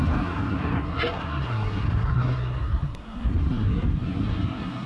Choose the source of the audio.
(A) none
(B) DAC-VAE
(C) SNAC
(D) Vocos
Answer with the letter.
C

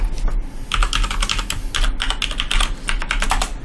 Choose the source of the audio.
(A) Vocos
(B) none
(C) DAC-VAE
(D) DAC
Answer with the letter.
B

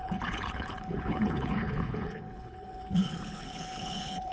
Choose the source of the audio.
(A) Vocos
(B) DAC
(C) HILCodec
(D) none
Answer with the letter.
C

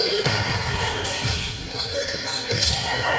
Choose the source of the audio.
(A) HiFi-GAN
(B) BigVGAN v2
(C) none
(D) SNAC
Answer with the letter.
D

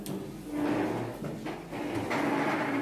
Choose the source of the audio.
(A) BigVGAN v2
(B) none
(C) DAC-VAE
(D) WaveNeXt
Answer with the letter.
B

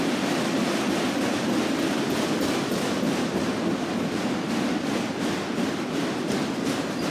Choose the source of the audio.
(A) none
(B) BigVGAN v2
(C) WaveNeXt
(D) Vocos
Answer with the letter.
A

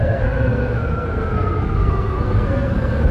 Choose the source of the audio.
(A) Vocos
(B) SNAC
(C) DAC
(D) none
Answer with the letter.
B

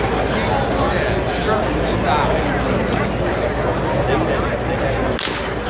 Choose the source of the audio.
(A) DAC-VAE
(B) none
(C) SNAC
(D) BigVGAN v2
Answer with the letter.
B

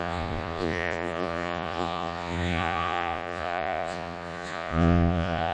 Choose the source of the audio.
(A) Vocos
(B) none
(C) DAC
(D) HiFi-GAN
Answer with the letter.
A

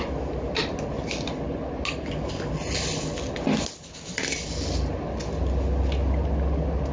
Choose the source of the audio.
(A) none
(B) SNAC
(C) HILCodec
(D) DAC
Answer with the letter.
A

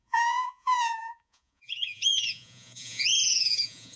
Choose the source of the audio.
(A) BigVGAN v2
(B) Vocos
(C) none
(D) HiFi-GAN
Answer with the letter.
B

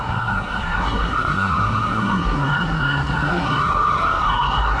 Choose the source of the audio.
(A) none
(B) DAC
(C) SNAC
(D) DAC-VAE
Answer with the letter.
C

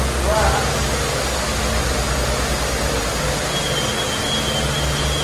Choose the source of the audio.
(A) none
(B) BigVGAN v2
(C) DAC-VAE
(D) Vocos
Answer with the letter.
A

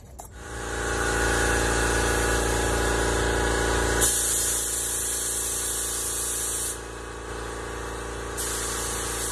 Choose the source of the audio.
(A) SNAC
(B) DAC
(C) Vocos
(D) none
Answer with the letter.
D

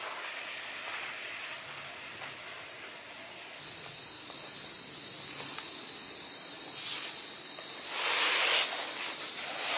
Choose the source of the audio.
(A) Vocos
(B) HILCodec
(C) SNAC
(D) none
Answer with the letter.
D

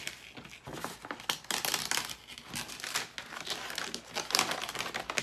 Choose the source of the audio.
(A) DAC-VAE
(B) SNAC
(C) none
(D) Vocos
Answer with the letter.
C